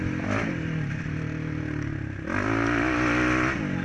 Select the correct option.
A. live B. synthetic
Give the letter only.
A